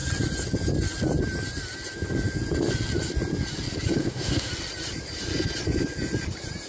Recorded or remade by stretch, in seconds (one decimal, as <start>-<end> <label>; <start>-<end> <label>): 0.0-4.0 recorded; 4.0-4.5 remade; 4.5-6.7 recorded